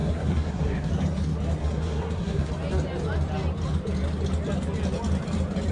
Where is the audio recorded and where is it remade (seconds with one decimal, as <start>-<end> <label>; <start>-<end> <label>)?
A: 0.0-0.9 remade; 0.9-1.6 recorded; 1.6-2.5 remade; 2.5-5.7 recorded